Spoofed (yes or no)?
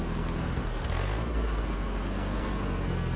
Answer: yes